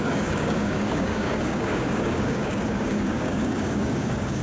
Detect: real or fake fake